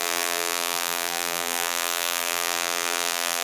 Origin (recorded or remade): remade